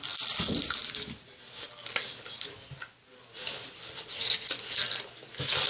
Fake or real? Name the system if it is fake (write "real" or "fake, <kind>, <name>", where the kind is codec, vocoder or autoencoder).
real